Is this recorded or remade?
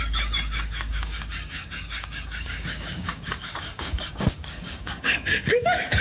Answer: remade